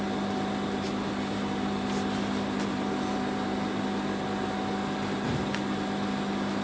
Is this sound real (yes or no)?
yes